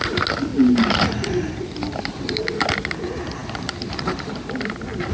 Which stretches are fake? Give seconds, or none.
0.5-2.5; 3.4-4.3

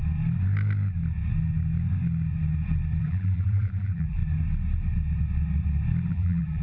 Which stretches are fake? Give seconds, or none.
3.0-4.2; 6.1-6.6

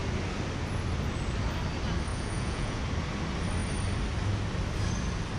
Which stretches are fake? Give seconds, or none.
2.1-2.8

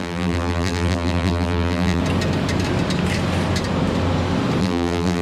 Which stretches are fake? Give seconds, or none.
0.0-2.0; 4.6-5.2

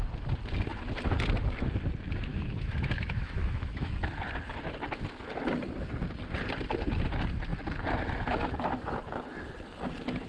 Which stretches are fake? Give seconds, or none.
2.3-3.9

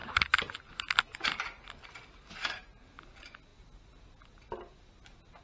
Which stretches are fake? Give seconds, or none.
none

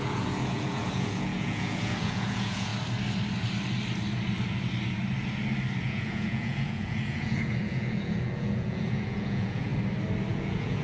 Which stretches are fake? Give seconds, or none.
0.0-2.7; 5.8-9.7; 10.3-10.8